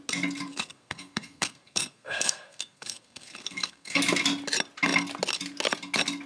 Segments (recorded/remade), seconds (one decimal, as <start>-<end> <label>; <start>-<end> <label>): 0.0-0.5 recorded; 0.5-4.0 remade; 4.0-6.3 recorded

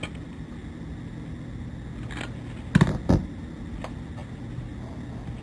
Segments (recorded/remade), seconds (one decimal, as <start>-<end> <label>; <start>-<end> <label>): 0.0-5.4 recorded